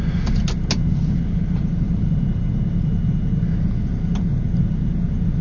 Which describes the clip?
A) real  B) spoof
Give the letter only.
A